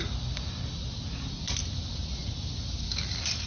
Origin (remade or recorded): recorded